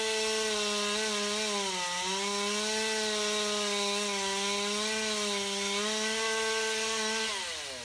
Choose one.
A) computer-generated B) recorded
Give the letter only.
B